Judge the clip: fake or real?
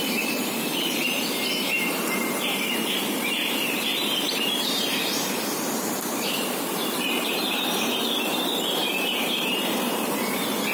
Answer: fake